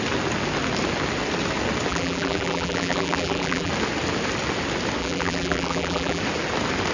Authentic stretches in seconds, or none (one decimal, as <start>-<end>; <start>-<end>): 0.0-1.9; 3.7-5.0; 6.2-6.9